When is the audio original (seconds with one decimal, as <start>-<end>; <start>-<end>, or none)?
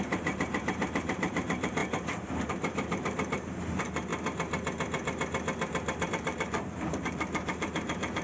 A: 1.8-2.5; 4.1-6.1